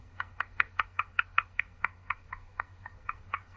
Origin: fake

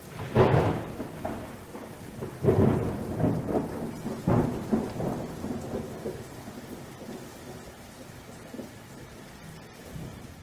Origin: real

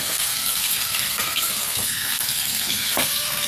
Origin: fake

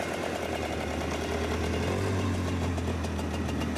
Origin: real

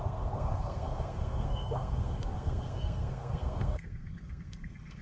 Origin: fake